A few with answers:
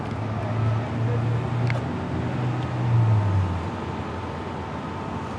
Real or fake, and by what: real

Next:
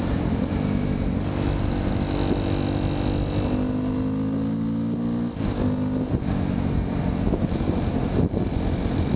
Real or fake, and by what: real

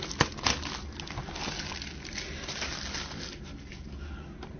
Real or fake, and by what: real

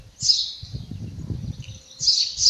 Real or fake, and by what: real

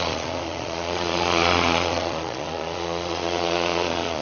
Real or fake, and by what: fake, vocoder, Vocos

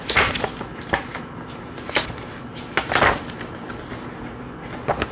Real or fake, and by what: real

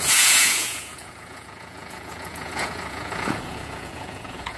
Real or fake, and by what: fake, vocoder, Vocos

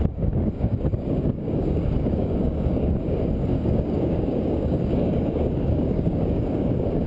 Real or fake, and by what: fake, codec, DAC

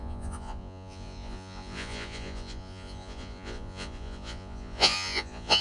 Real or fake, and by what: fake, vocoder, Vocos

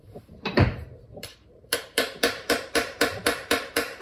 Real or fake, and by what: fake, vocoder, BigVGAN v2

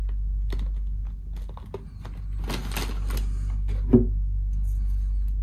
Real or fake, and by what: real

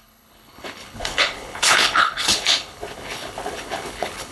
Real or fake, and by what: fake, codec, HILCodec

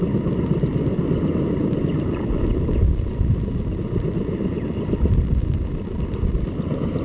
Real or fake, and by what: real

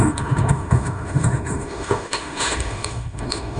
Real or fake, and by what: fake, autoencoder, DAC-VAE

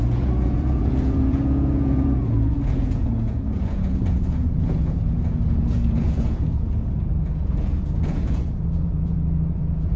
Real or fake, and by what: fake, vocoder, Vocos